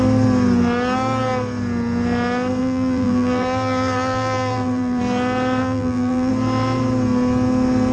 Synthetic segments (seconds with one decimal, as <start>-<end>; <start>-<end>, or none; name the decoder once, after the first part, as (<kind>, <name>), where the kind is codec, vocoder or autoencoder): 2.6-5.0 (vocoder, BigVGAN v2); 5.6-6.3